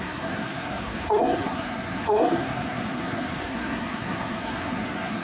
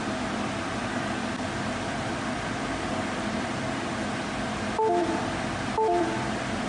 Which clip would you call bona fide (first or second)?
second